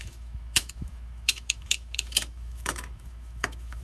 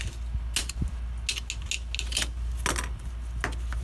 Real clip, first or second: second